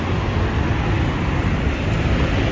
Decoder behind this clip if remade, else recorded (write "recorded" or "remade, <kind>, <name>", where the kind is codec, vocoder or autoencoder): recorded